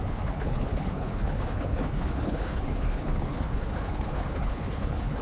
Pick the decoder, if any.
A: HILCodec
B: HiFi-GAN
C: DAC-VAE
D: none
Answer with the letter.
A